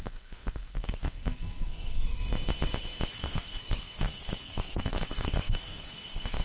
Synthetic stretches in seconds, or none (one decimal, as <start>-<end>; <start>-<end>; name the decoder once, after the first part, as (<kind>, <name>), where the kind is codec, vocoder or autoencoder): 0.0-2.3 (codec, SNAC); 3.1-6.4